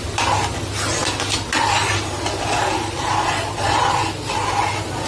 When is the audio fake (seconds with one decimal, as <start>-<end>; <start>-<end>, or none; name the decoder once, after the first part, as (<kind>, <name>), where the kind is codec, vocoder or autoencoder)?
none